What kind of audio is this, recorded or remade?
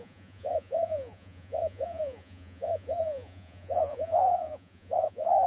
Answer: remade